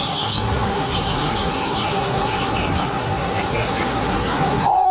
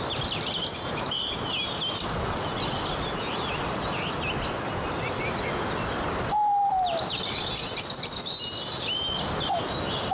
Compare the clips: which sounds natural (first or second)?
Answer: second